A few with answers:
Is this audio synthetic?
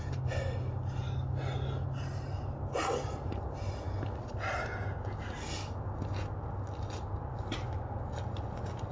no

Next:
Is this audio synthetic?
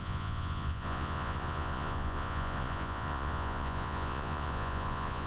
yes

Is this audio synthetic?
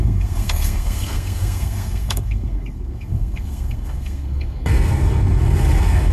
yes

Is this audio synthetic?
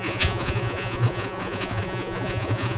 yes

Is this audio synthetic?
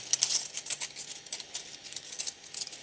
no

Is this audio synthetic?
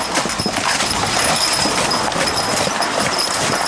yes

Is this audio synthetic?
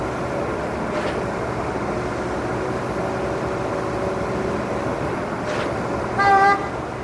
no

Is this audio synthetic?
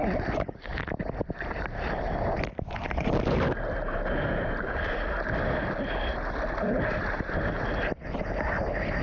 no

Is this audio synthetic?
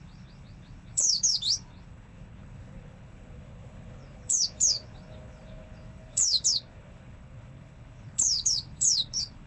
yes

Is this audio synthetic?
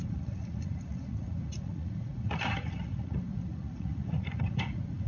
yes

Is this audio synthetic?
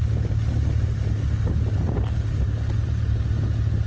no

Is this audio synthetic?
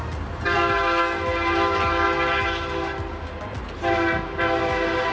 no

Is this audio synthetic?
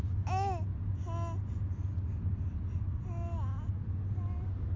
no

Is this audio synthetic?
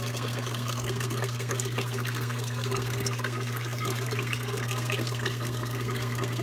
yes